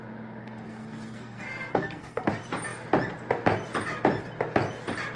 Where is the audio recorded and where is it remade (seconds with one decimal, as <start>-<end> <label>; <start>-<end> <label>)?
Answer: 0.0-0.4 recorded; 0.4-2.3 remade; 2.3-5.2 recorded